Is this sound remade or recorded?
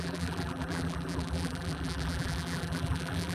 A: remade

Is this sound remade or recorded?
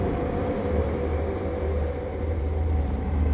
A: remade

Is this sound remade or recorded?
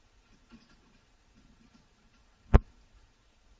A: remade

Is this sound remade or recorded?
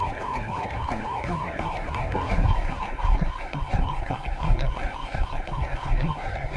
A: remade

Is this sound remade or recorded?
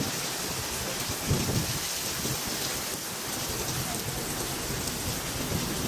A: recorded